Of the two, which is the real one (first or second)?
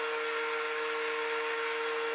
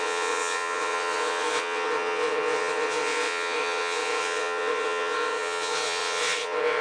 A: first